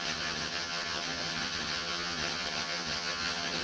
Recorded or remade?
remade